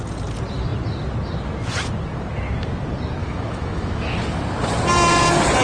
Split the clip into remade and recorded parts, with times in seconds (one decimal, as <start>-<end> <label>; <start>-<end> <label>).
0.0-3.2 recorded; 3.2-4.2 remade; 4.2-5.6 recorded